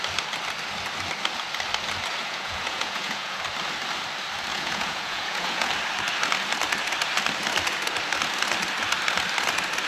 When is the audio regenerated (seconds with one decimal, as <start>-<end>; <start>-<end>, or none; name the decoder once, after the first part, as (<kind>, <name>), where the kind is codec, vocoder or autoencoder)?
2.2-3.4 (vocoder, Vocos); 4.5-5.7